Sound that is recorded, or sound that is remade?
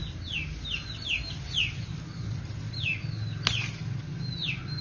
recorded